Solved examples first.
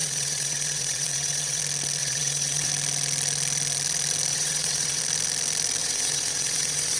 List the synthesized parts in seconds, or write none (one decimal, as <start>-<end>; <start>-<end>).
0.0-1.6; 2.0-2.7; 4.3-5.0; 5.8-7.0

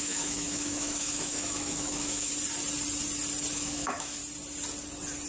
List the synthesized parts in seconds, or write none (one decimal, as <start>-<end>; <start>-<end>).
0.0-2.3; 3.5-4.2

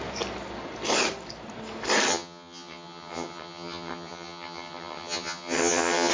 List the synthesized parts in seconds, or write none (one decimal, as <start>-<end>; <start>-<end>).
2.1-6.1